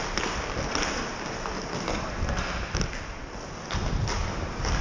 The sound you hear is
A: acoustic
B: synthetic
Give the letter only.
A